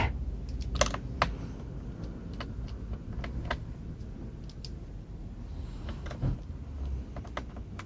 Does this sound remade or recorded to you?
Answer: recorded